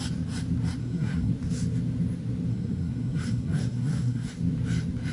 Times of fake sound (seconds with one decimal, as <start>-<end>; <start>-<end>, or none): 0.8-1.3; 2.5-4.3

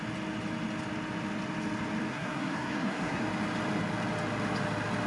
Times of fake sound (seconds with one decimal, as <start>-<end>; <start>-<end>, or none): 2.1-3.2

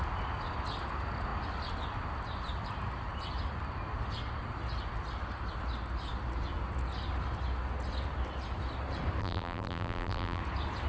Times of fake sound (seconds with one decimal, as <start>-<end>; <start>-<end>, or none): 9.2-10.4

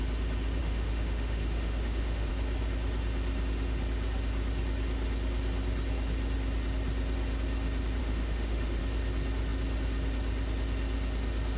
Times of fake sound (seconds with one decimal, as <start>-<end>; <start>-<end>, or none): 0.6-2.3; 8.0-8.8

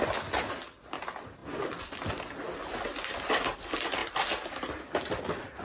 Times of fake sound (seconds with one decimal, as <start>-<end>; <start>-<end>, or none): none

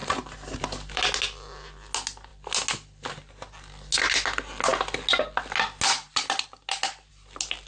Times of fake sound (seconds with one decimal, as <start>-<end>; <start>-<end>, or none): none

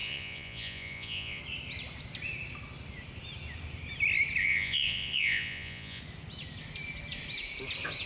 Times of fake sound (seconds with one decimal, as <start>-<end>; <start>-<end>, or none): 0.0-1.4; 4.4-6.0

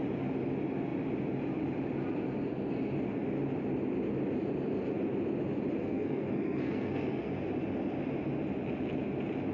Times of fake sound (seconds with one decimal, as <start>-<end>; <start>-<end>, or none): 5.8-7.3